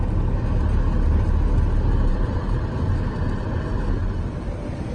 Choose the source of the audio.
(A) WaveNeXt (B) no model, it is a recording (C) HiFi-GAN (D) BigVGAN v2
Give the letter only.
B